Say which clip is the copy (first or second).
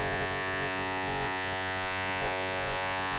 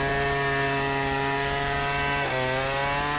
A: first